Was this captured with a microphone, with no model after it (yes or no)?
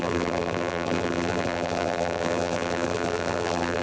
no